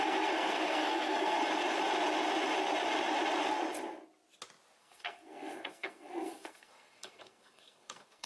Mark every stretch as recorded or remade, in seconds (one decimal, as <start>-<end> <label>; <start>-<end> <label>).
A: 0.0-1.4 remade; 1.4-4.8 recorded; 4.8-8.3 remade